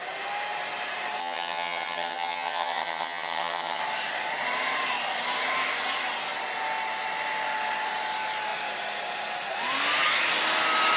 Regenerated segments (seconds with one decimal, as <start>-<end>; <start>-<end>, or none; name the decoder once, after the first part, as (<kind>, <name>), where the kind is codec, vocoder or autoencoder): 1.2-3.8 (vocoder, HiFi-GAN)